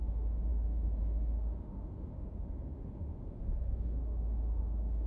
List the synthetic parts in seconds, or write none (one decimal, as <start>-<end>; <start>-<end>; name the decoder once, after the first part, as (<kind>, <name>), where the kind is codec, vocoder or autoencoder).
0.0-5.1 (autoencoder, DAC-VAE)